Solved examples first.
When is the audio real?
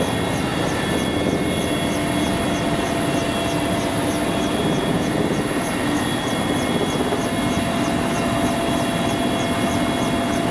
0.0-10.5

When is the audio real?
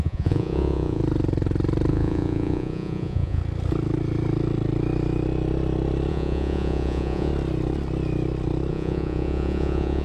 1.0-1.9; 3.4-6.1; 7.3-8.7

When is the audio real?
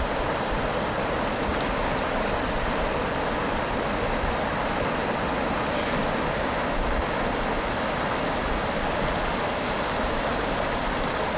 0.0-11.4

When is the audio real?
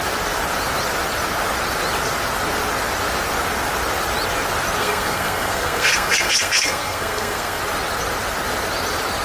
0.0-4.8; 7.6-9.2